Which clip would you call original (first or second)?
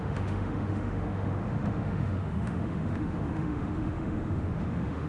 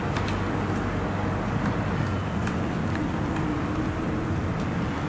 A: second